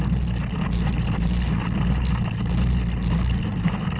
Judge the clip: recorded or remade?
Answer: recorded